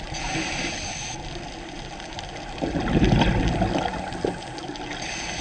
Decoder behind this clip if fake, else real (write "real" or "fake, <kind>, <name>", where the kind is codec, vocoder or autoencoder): real